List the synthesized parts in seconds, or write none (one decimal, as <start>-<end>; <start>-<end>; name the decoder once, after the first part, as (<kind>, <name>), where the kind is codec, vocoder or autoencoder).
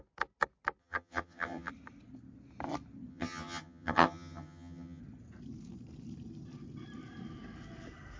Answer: 0.8-1.7 (vocoder, HiFi-GAN); 3.1-5.0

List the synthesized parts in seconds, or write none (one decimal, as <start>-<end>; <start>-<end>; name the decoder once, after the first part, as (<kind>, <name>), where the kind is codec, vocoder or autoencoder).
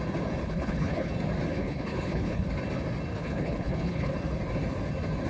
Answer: 0.4-1.1 (codec, HILCodec); 1.5-2.5; 3.1-4.1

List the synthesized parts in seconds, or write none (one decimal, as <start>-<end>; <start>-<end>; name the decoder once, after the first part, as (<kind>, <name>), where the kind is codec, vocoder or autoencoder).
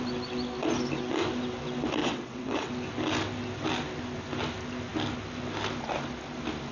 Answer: 2.0-2.7 (vocoder, WaveNeXt)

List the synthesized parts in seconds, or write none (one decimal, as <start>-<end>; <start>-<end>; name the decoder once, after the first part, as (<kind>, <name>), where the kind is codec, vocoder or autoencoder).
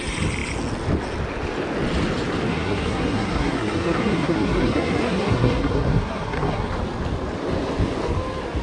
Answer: 2.5-6.7 (codec, SNAC)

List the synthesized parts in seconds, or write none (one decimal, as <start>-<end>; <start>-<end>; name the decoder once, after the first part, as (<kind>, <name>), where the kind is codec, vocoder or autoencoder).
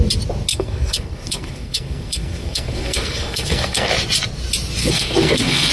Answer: 0.5-3.9 (codec, SNAC); 4.8-5.7